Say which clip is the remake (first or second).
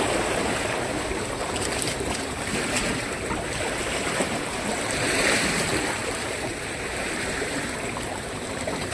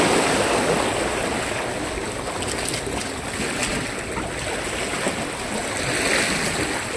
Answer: first